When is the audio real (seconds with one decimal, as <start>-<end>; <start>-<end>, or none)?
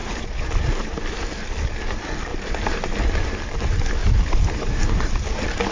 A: 1.0-2.3; 3.3-4.0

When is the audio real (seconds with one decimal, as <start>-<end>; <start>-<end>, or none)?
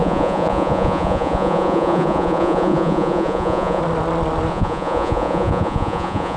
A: 3.8-4.5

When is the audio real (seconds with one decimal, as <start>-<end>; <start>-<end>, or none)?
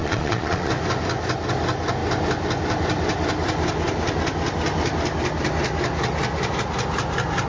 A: 0.7-7.5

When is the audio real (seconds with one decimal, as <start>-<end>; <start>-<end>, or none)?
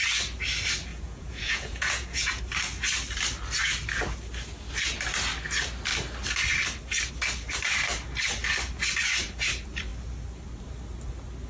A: 0.0-0.9; 2.4-11.5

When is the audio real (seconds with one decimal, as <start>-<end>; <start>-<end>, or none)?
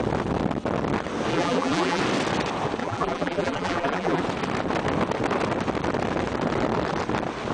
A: 0.0-1.3; 2.0-2.8; 4.2-7.5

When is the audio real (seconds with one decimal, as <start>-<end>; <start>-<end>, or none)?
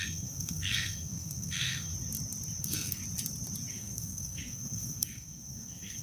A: 1.9-2.6; 3.0-3.7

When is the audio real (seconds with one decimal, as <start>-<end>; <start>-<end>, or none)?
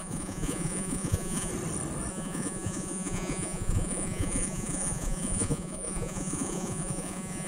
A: 1.5-2.1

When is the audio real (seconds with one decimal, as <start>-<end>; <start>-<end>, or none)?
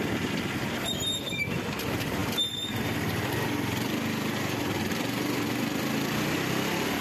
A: 0.0-7.0